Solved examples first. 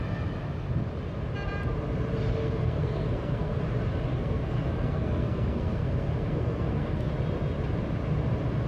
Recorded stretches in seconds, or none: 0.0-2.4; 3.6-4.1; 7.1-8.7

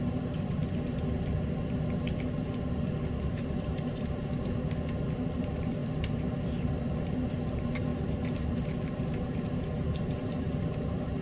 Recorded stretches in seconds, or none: 0.6-3.2

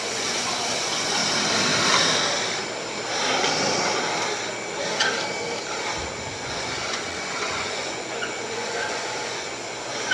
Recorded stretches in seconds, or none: 1.2-6.0

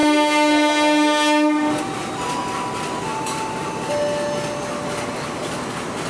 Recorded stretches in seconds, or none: 0.0-6.1

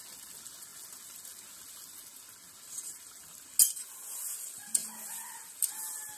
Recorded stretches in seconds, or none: 0.0-6.2